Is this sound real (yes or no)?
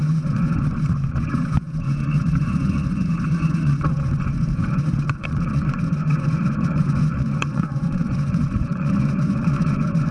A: no